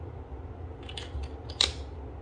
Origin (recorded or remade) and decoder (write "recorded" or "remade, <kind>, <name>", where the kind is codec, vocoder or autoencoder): recorded